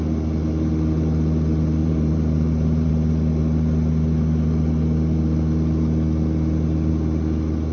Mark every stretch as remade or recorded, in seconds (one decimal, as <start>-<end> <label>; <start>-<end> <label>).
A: 0.0-1.8 recorded; 1.8-2.9 remade; 2.9-7.7 recorded